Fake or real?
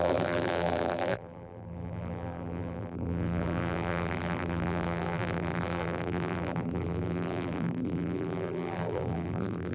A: fake